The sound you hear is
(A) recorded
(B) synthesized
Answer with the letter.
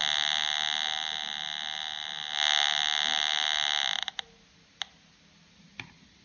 A